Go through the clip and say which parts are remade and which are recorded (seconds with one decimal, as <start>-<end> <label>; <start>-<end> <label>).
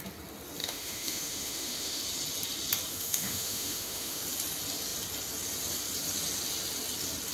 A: 0.0-0.6 recorded; 0.6-2.0 remade; 2.0-2.9 recorded; 2.9-4.2 remade; 4.2-7.3 recorded